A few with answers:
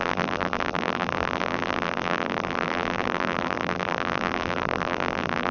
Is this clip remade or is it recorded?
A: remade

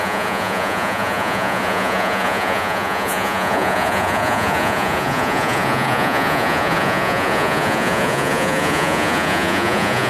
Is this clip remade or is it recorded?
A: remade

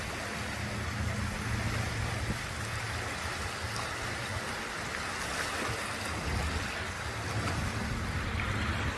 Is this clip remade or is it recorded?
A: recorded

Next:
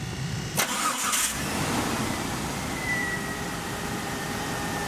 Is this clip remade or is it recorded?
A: remade